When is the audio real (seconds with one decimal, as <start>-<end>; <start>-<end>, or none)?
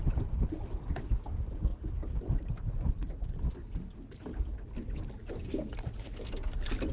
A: 0.0-6.9